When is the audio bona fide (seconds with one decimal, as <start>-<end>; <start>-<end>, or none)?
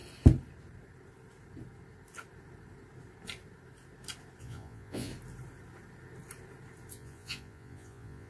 0.0-4.4; 5.1-6.9